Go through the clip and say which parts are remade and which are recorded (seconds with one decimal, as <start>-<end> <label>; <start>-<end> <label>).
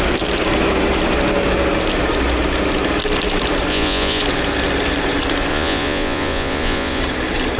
0.0-3.7 recorded; 3.7-4.2 remade; 4.2-5.5 recorded; 5.5-7.0 remade; 7.0-7.6 recorded